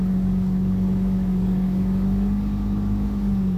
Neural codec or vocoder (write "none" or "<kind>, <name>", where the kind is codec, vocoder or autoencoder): codec, DAC